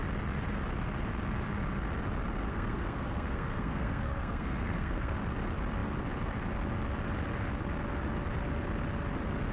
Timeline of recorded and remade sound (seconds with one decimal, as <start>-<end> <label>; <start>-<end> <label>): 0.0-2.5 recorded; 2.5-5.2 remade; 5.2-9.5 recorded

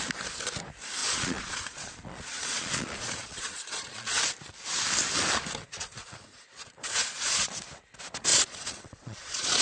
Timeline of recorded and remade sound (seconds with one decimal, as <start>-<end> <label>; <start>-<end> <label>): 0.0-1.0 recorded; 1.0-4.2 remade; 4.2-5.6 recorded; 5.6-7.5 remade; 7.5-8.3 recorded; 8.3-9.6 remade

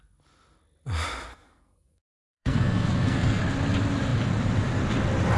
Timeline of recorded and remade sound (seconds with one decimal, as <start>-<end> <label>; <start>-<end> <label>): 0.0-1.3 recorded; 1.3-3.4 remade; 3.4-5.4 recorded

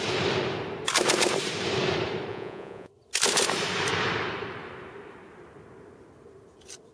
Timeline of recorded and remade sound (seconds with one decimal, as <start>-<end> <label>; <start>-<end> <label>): 0.0-2.3 recorded; 2.3-2.9 remade; 2.9-6.9 recorded

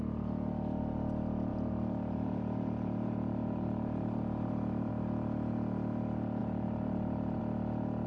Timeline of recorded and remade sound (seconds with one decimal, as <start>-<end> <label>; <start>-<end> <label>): 0.0-1.5 recorded; 1.5-4.9 remade; 4.9-6.4 recorded; 6.4-7.4 remade; 7.4-8.1 recorded

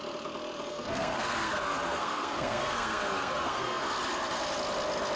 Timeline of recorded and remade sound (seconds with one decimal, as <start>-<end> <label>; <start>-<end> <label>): 0.0-0.7 recorded; 0.7-3.8 remade; 3.8-5.2 recorded